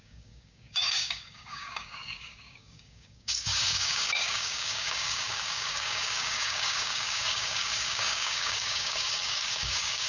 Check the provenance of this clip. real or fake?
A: fake